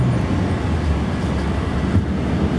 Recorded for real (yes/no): yes